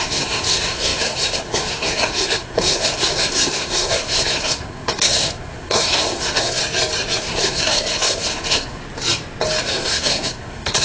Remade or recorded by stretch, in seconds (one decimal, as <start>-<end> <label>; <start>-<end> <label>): 0.0-6.6 remade; 6.6-7.2 recorded; 7.2-8.8 remade; 8.8-9.6 recorded; 9.6-10.8 remade